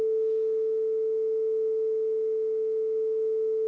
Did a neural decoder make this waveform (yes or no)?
no